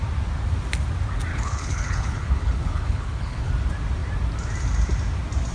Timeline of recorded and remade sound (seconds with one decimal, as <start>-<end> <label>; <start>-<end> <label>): 0.0-1.3 recorded; 1.3-3.5 remade; 3.5-5.5 recorded